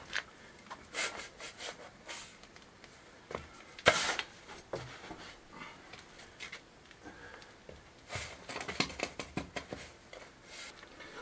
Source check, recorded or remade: recorded